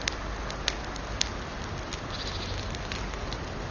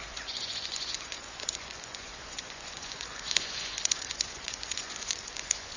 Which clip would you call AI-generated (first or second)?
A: second